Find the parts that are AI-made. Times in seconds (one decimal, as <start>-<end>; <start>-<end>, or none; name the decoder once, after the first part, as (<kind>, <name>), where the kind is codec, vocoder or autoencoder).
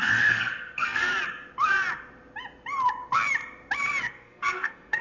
0.0-1.1 (codec, SNAC); 4.1-5.0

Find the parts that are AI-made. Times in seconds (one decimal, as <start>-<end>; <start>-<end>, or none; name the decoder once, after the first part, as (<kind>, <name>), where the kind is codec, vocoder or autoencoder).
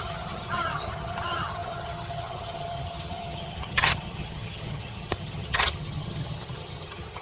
0.0-7.2 (vocoder, HiFi-GAN)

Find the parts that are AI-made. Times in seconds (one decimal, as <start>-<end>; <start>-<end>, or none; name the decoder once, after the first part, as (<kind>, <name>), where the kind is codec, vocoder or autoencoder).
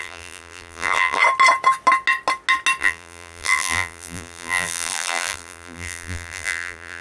0.0-1.2 (vocoder, BigVGAN v2); 2.8-7.0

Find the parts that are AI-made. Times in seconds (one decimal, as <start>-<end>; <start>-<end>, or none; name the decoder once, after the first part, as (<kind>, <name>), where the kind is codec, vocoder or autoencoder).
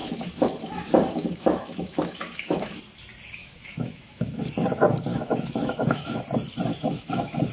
0.0-2.7 (autoencoder, DAC-VAE); 3.4-4.4; 5.1-6.2; 6.7-7.5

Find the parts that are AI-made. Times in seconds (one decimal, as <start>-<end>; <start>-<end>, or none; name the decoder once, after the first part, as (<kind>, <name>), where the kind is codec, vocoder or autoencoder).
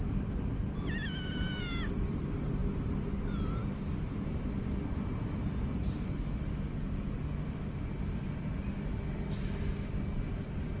none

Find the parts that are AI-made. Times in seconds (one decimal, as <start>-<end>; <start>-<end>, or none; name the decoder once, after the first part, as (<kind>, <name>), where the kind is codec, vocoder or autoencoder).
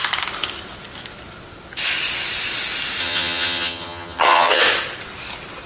3.0-4.6 (vocoder, HiFi-GAN)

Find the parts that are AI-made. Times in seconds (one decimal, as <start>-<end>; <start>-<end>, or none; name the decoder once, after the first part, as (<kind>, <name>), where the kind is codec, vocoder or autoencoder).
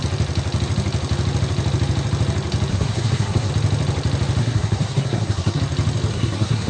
2.7-3.5 (codec, SNAC); 4.4-5.6; 6.1-6.7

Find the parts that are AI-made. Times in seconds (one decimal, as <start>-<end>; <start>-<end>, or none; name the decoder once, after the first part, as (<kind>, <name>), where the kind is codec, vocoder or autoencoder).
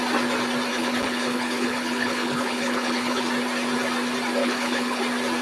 0.7-3.2 (codec, HILCodec); 4.4-5.0